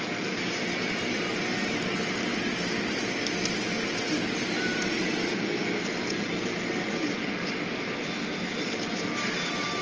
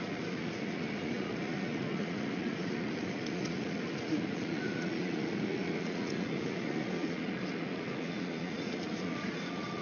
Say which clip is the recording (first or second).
first